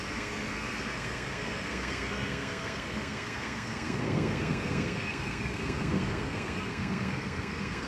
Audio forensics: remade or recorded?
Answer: remade